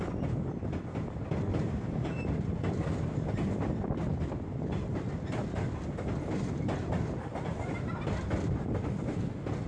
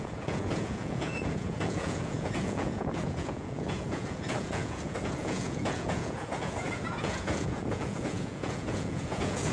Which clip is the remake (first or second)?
second